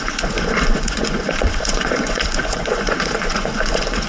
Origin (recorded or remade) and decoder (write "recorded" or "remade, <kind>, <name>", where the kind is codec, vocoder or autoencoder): remade, vocoder, Vocos